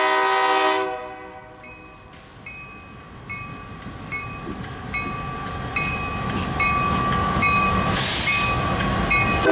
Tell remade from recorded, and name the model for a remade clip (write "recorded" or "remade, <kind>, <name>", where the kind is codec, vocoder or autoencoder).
recorded